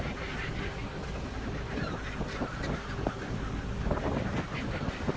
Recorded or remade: recorded